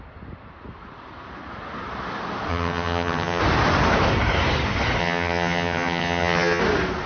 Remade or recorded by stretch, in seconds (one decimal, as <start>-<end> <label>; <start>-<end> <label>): 0.0-2.5 recorded; 2.5-3.4 remade; 3.4-5.0 recorded; 5.0-6.6 remade; 6.6-7.1 recorded